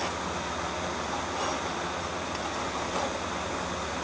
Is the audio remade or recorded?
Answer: recorded